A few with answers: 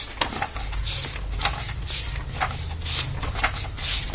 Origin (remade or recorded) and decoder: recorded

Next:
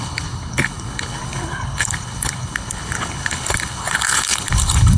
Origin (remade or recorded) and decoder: remade, codec, HILCodec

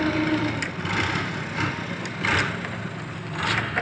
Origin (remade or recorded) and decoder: recorded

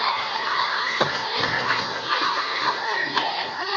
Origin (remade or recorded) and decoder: remade, codec, SNAC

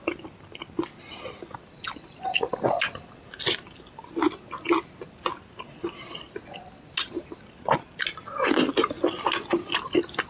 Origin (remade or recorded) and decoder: recorded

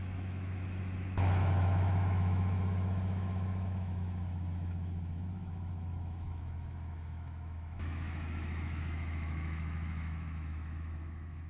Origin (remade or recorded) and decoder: remade, autoencoder, DAC-VAE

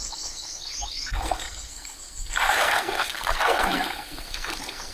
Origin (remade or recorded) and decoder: remade, codec, SNAC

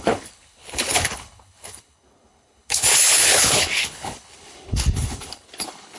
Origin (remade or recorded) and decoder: remade, codec, HILCodec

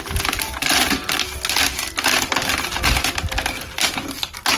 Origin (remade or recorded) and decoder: recorded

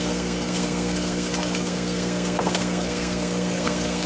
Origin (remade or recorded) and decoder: remade, codec, SNAC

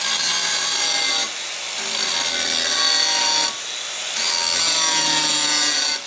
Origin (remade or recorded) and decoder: recorded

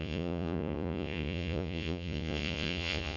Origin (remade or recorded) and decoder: remade, vocoder, Vocos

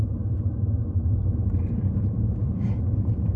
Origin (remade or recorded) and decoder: remade, vocoder, BigVGAN v2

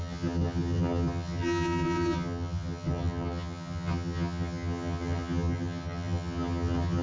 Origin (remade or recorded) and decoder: remade, vocoder, HiFi-GAN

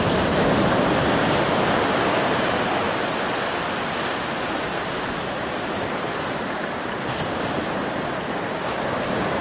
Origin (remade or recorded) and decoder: remade, vocoder, BigVGAN v2